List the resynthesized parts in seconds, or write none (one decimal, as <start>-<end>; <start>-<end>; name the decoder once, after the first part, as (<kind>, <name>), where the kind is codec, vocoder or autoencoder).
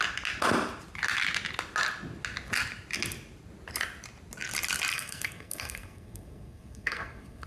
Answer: 4.9-7.5 (codec, SNAC)